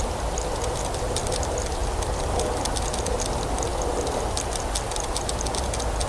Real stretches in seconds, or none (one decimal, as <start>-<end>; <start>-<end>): 0.0-6.1